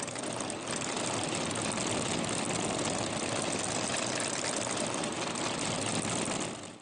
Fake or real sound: real